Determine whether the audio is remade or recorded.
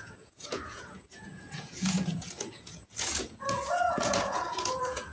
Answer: remade